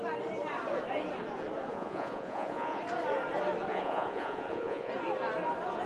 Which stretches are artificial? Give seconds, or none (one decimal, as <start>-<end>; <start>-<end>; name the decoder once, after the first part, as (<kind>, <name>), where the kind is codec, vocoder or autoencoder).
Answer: 1.7-2.8 (vocoder, Vocos); 3.7-4.9